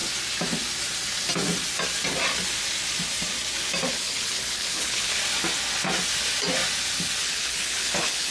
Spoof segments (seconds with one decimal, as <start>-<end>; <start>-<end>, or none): 3.9-5.2; 7.2-8.3